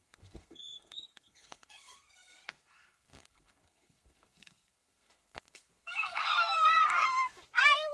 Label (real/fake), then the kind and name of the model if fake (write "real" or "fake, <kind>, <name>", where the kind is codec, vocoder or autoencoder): fake, codec, SNAC